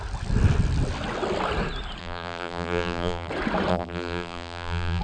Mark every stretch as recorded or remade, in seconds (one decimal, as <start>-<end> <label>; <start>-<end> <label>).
0.0-2.0 recorded; 2.0-3.3 remade; 3.3-3.7 recorded; 3.7-5.0 remade